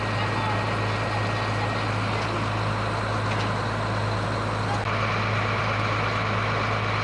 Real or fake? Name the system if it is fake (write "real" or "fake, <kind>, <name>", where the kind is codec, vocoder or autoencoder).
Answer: real